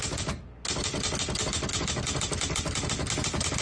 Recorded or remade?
recorded